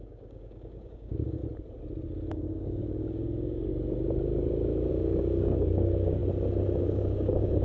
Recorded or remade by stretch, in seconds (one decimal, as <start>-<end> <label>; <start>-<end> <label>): 0.0-1.4 remade; 1.4-2.3 recorded; 2.3-3.7 remade; 3.7-4.9 recorded; 4.9-6.2 remade; 6.2-6.8 recorded; 6.8-7.6 remade